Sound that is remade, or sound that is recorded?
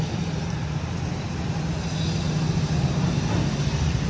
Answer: recorded